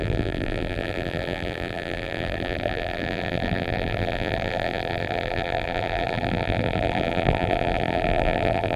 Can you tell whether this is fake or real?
fake